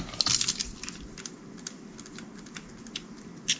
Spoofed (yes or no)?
no